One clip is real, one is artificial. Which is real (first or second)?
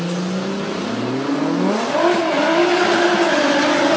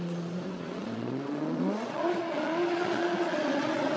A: first